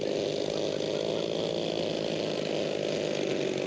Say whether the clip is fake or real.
real